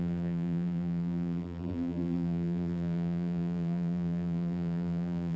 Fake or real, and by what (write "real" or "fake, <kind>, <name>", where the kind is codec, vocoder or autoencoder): fake, vocoder, BigVGAN v2